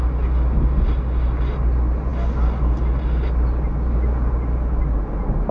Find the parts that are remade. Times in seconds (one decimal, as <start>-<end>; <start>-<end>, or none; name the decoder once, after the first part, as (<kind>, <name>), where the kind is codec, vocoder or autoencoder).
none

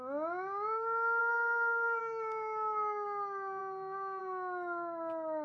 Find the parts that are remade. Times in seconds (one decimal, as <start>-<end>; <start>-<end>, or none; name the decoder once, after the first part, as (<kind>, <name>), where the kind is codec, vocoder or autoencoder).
1.2-2.0 (codec, SNAC)

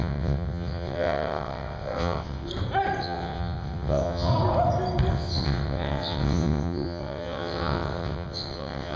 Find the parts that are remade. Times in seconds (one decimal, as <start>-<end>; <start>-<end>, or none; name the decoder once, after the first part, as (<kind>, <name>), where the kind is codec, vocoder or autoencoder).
0.0-2.5 (vocoder, WaveNeXt); 3.0-4.3; 5.1-9.0

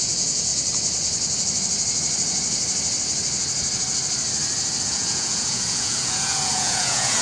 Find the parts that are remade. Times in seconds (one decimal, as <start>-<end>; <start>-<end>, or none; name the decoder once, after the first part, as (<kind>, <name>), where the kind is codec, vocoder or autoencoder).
0.0-0.5 (vocoder, Vocos); 4.8-7.2

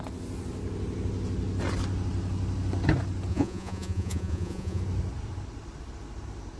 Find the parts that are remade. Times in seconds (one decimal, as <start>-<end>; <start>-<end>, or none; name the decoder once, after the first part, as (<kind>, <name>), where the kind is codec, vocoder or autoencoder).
3.3-4.8 (vocoder, Vocos)

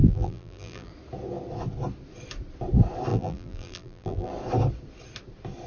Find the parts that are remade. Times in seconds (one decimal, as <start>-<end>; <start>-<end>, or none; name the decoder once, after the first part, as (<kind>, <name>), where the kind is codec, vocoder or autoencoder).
0.0-0.9 (vocoder, BigVGAN v2); 3.1-4.3

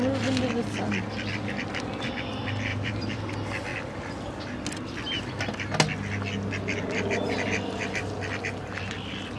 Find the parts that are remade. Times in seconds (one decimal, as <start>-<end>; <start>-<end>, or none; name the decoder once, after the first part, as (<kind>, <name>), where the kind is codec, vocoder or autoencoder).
2.7-3.3 (vocoder, BigVGAN v2)

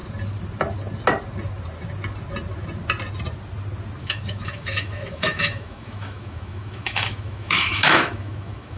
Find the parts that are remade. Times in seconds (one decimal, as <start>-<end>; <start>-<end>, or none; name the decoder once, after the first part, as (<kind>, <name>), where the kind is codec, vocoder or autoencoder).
4.0-8.8 (autoencoder, DAC-VAE)